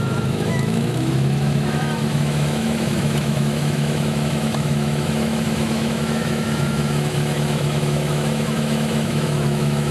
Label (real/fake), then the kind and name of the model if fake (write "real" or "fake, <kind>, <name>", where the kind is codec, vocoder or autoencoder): fake, autoencoder, DAC-VAE